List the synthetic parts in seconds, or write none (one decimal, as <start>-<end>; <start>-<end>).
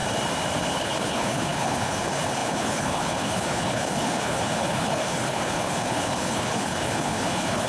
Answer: 0.6-7.7